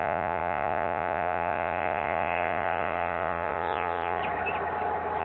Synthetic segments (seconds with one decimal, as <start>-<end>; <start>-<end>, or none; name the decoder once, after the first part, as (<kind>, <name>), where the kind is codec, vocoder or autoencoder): 0.0-4.2 (vocoder, Vocos)